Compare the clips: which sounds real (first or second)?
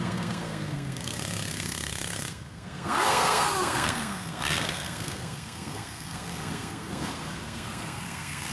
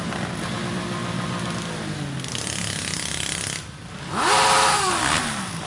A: second